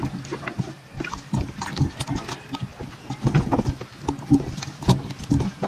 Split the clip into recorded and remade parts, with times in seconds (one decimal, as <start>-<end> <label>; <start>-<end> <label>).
0.0-5.7 recorded